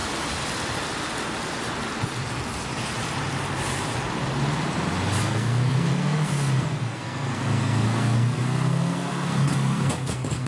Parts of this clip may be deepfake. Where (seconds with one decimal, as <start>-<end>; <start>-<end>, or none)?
5.2-10.5